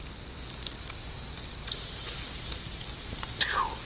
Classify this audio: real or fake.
real